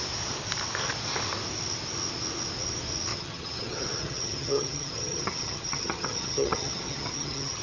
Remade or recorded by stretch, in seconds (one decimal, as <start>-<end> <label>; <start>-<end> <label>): 0.0-3.1 recorded; 3.1-7.6 remade